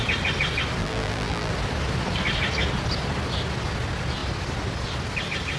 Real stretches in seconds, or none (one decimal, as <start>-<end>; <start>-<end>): 0.0-0.8; 1.5-5.6